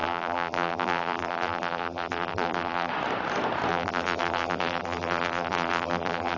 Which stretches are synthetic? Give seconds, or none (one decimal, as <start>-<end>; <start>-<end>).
0.0-2.9; 3.7-6.4